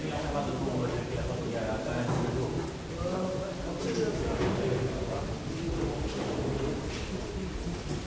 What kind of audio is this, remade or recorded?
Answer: recorded